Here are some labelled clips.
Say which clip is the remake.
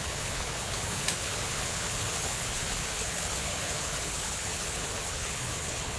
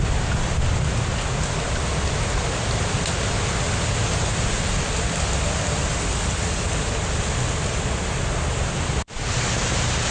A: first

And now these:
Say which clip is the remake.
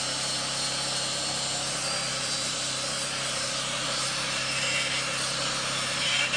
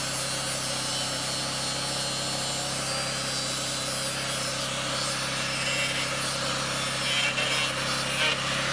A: first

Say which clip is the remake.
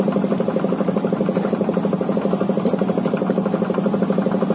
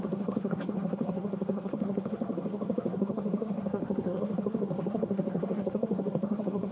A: second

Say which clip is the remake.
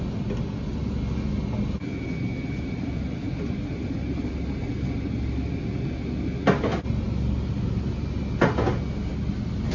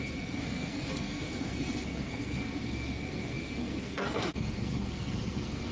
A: second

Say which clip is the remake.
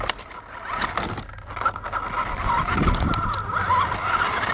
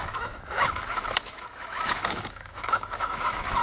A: second